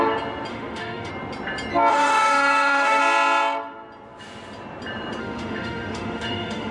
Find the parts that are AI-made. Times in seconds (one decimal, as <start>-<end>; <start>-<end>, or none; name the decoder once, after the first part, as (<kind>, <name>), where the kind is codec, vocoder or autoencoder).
0.5-1.1 (autoencoder, DAC-VAE); 1.9-3.0; 5.2-6.7